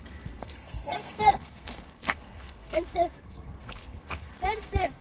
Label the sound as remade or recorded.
remade